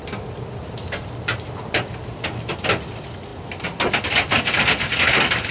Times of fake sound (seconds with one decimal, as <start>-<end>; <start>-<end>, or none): none

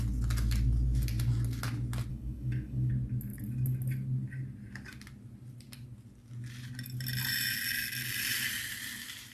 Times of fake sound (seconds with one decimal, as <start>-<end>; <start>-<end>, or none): 2.1-2.9

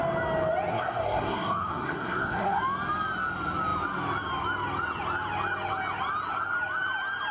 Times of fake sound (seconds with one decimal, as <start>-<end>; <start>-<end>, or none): 0.7-2.6

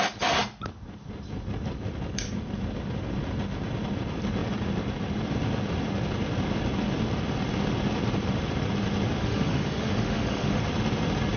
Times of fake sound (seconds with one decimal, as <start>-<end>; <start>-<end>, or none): 9.2-10.6

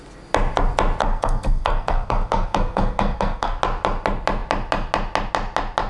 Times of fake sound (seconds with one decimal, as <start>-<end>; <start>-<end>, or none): 1.0-3.6

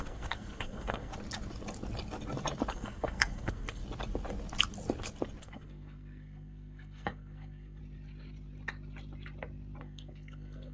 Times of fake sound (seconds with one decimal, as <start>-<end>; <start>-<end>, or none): 0.0-1.1; 2.7-3.8; 5.4-7.8; 9.8-10.7